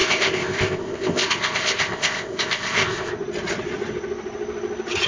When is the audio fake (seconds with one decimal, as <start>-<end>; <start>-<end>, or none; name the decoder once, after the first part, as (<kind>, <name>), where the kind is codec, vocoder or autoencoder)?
0.0-3.1 (codec, ZipCodec)